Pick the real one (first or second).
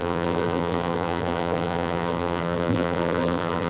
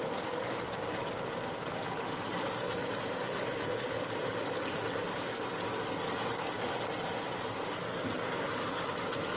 second